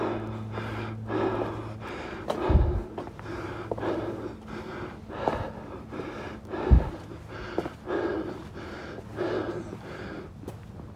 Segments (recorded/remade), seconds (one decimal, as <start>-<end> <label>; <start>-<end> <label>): 0.0-8.1 recorded; 8.1-8.8 remade; 8.8-11.0 recorded